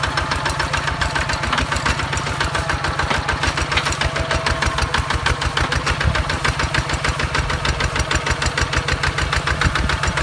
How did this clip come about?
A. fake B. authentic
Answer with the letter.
B